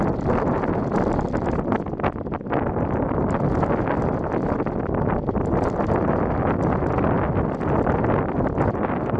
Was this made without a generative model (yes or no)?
yes